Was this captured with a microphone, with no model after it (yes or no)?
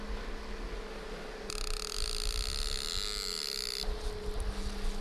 yes